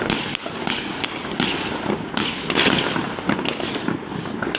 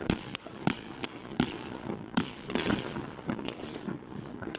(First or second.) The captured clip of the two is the first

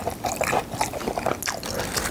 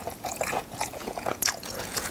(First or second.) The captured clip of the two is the first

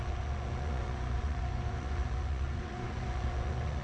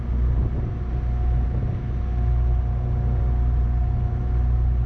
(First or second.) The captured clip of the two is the second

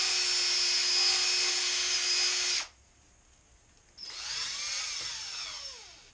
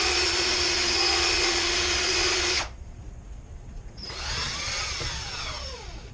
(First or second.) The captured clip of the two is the first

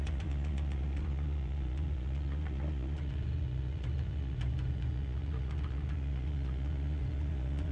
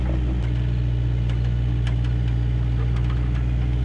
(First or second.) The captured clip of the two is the second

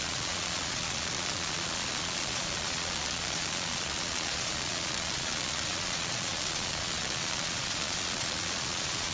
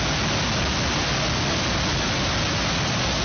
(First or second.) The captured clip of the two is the second